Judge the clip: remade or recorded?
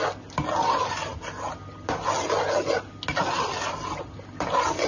recorded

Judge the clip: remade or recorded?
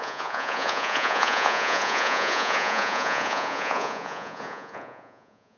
remade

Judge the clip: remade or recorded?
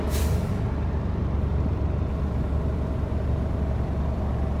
remade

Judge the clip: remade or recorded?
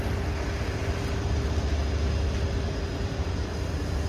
recorded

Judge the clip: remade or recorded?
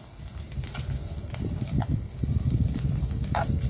recorded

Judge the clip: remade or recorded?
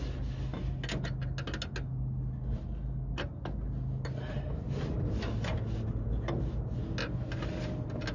recorded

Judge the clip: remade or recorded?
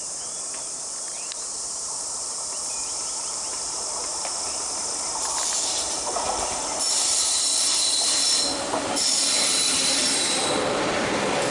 remade